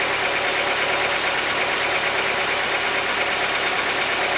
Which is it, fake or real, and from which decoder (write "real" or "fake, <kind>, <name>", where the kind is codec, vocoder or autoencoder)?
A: real